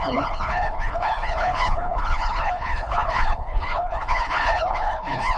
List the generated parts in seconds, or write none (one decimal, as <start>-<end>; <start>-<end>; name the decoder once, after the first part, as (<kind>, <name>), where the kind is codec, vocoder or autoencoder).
0.0-5.4 (codec, HILCodec)